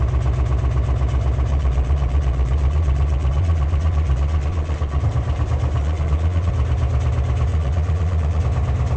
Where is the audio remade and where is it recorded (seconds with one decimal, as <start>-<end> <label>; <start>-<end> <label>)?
0.0-1.5 recorded; 1.5-5.0 remade; 5.0-5.8 recorded; 5.8-6.5 remade; 6.5-7.5 recorded; 7.5-8.4 remade; 8.4-9.0 recorded